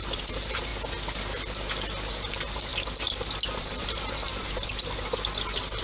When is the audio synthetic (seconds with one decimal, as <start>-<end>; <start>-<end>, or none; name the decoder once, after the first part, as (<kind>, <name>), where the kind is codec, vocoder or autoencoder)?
0.0-0.7 (vocoder, BigVGAN v2); 2.1-2.7; 3.6-4.3